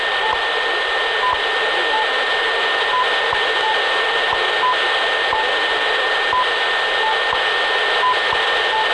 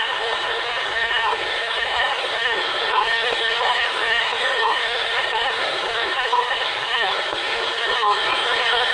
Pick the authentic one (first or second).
first